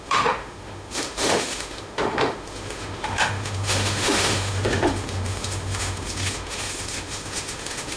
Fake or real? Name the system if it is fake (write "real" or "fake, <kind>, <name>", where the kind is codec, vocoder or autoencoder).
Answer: fake, autoencoder, DAC-VAE